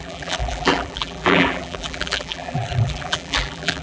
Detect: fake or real fake